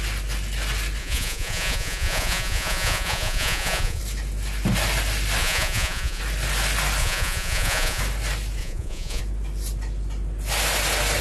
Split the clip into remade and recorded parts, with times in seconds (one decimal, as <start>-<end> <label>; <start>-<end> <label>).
0.0-1.0 recorded; 1.0-4.0 remade; 4.0-5.4 recorded; 5.4-6.2 remade; 6.2-7.0 recorded; 7.0-8.0 remade; 8.0-8.6 recorded; 8.6-9.2 remade; 9.2-11.2 recorded